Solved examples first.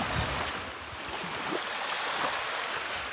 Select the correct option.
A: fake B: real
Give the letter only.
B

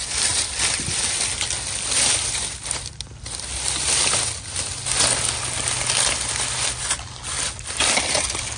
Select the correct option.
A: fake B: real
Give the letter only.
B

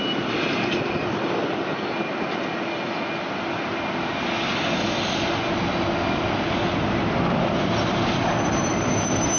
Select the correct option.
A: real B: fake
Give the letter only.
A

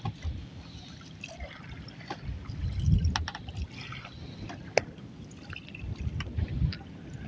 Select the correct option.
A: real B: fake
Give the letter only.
A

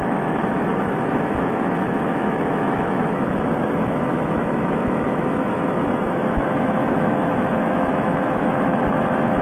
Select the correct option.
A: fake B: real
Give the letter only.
A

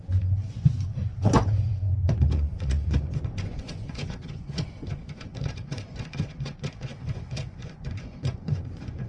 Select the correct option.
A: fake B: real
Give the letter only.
A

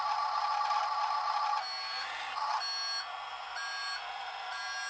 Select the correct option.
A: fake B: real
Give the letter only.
B